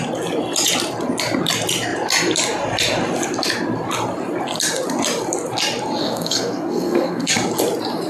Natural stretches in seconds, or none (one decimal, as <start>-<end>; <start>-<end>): 0.0-6.0; 7.3-8.1